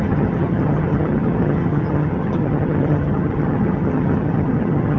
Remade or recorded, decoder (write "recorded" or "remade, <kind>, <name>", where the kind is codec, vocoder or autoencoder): remade, vocoder, HiFi-GAN